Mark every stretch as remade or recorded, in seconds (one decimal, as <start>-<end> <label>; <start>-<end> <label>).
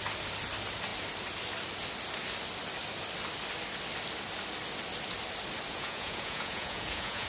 0.0-5.7 recorded; 5.7-7.3 remade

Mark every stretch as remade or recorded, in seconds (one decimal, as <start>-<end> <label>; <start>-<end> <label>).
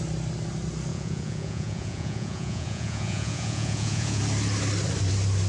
0.0-0.9 recorded; 0.9-4.2 remade; 4.2-5.5 recorded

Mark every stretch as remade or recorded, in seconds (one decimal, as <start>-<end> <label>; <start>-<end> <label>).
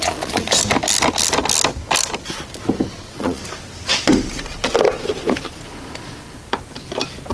0.0-0.6 remade; 0.6-2.9 recorded; 2.9-3.4 remade; 3.4-7.3 recorded